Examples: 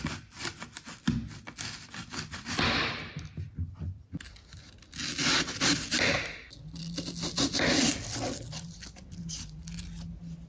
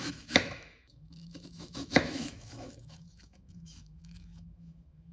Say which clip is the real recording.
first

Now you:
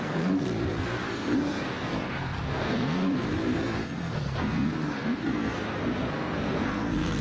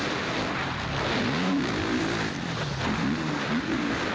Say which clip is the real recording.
second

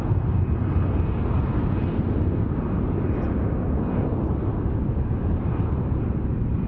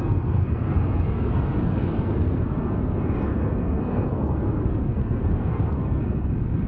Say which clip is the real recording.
first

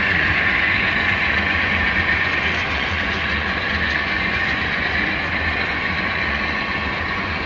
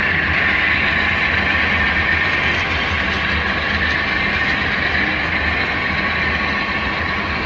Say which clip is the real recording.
second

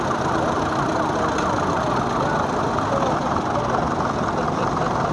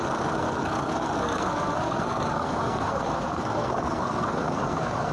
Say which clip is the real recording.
first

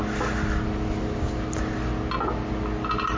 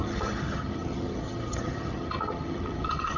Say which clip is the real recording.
first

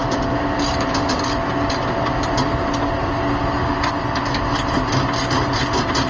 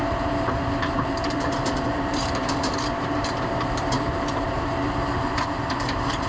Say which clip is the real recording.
first